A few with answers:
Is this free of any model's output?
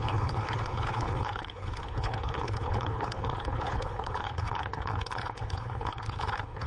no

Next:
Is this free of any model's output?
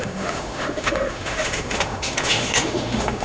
no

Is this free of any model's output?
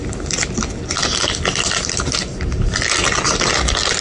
yes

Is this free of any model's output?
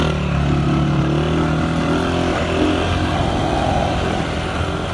yes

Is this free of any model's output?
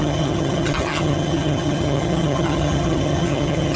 no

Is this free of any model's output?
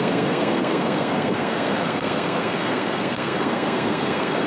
no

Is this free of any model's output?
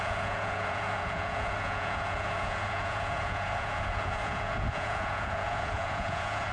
no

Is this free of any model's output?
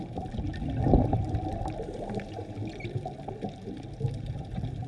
yes